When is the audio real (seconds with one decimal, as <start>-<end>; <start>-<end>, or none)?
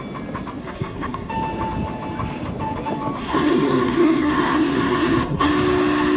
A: 0.0-0.6; 1.3-3.2; 5.5-6.2